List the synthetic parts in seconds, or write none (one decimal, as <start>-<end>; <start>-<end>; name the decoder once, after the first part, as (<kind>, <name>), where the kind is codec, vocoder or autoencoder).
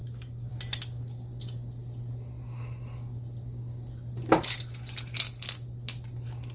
0.0-0.5 (codec, DAC)